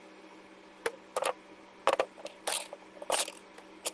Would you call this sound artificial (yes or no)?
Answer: no